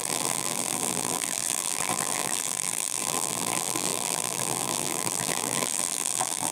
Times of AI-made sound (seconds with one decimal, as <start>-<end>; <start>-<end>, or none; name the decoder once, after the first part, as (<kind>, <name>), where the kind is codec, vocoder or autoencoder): 0.0-6.5 (vocoder, BigVGAN v2)